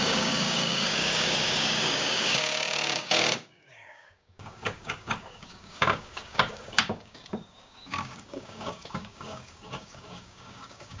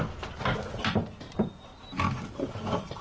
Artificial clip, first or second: first